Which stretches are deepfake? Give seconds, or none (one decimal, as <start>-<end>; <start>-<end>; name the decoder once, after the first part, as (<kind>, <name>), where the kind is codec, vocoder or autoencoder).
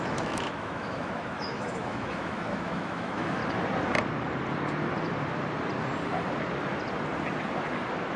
0.0-3.4 (autoencoder, DAC-VAE)